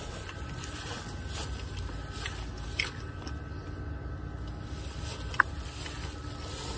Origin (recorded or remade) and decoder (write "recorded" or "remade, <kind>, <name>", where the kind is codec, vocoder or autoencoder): recorded